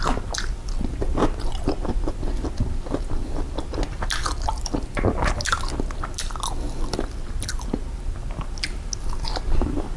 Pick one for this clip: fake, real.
real